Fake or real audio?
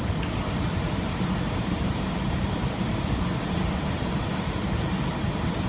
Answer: fake